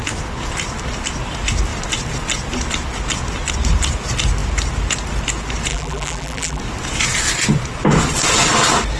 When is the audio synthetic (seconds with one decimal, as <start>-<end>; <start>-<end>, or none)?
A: 5.7-6.6